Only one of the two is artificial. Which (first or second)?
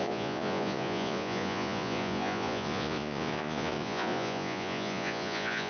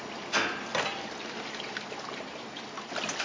first